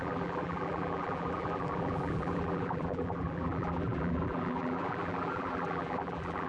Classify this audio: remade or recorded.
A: remade